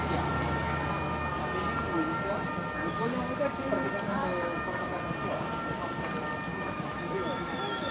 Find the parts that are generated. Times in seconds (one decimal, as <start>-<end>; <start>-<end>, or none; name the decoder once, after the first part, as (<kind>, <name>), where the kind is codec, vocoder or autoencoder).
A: 4.2-4.8 (autoencoder, DAC-VAE); 6.5-7.9